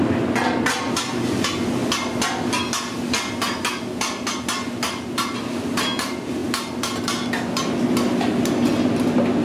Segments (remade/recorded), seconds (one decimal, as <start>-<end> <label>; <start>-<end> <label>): 0.0-9.4 recorded